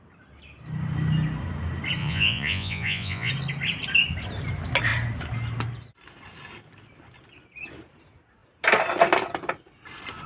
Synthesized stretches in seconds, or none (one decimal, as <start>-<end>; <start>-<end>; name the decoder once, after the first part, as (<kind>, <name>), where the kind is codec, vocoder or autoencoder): 2.0-3.3 (vocoder, Vocos)

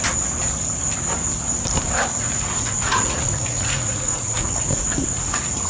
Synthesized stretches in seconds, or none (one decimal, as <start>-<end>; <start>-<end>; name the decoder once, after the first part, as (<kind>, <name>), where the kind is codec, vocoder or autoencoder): 2.1-5.7 (vocoder, Vocos)

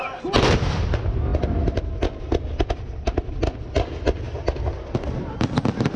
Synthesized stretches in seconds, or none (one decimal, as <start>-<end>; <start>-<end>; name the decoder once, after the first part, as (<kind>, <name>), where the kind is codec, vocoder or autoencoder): none